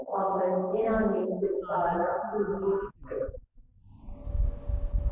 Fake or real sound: real